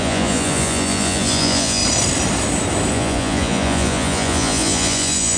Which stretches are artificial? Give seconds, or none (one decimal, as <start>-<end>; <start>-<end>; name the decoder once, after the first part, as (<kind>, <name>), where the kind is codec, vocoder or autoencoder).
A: 0.0-1.8 (vocoder, Vocos); 2.9-5.4